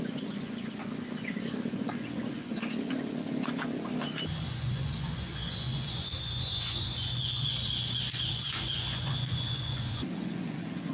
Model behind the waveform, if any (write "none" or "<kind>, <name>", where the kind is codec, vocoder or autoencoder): vocoder, Vocos